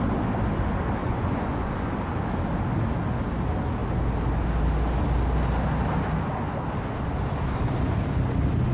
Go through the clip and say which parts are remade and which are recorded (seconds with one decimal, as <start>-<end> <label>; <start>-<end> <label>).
0.0-1.0 recorded; 1.0-1.9 remade; 1.9-8.7 recorded